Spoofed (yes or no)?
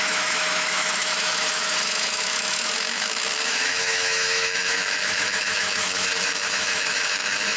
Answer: yes